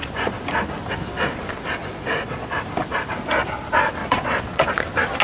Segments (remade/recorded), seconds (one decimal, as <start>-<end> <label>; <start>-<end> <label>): 0.0-1.8 recorded; 1.8-2.5 remade; 2.5-4.0 recorded; 4.0-4.7 remade; 4.7-5.2 recorded